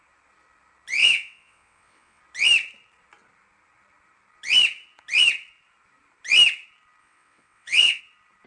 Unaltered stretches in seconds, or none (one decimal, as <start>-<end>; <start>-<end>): 0.0-1.0; 2.2-7.0; 8.0-8.5